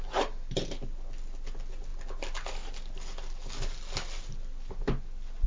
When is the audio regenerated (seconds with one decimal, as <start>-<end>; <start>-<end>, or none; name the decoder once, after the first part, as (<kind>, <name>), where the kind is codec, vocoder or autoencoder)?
none